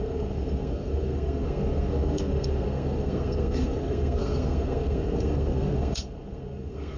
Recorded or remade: remade